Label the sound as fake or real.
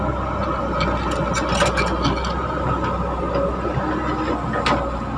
real